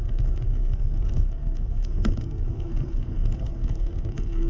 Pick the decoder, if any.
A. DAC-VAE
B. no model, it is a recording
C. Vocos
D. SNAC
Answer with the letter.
D